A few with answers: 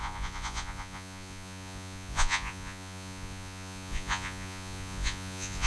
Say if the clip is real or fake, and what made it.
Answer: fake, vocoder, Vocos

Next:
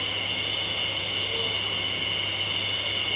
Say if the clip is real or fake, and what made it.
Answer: real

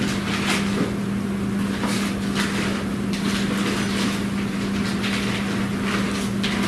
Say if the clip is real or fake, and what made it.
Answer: real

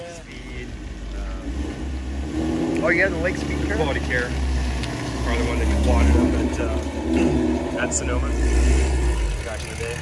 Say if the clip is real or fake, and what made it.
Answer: real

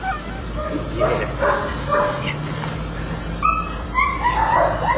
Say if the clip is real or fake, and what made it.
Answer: real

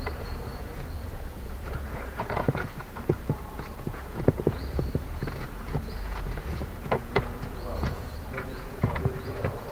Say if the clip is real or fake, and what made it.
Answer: fake, vocoder, Vocos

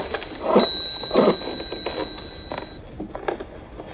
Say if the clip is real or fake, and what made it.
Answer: real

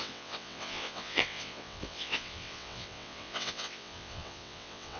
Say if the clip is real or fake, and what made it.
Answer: fake, vocoder, WaveNeXt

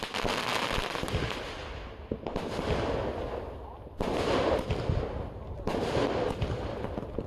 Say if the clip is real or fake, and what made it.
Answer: real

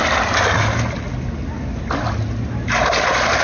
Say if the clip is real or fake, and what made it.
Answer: real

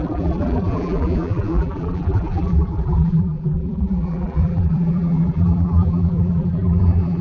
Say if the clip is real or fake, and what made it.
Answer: fake, vocoder, BigVGAN v2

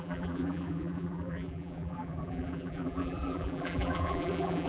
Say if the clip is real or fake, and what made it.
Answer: fake, vocoder, BigVGAN v2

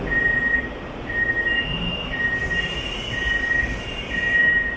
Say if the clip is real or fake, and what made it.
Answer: fake, vocoder, BigVGAN v2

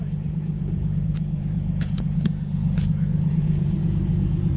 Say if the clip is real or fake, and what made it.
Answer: fake, vocoder, Vocos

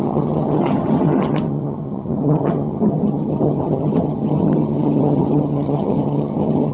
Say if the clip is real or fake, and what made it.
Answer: fake, vocoder, HiFi-GAN